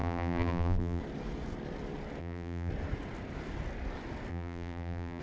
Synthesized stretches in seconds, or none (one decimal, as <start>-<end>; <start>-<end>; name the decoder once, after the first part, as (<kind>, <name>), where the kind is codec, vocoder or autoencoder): 0.0-1.0 (vocoder, BigVGAN v2); 2.2-2.7; 4.3-5.2